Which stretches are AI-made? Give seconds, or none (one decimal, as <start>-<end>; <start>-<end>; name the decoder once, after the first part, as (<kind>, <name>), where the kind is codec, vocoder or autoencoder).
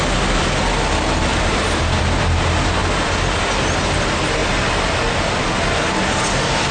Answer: 1.3-2.4 (vocoder, BigVGAN v2)